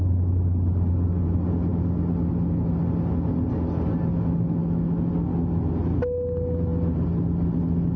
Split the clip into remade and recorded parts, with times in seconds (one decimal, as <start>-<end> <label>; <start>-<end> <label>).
0.0-4.6 recorded; 4.6-5.1 remade; 5.1-8.0 recorded